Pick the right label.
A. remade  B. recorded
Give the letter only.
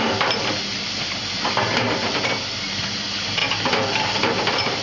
B